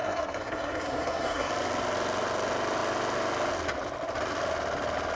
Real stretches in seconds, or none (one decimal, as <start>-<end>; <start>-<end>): 1.5-5.2